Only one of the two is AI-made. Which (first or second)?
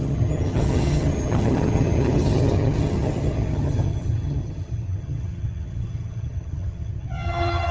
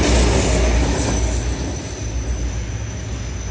first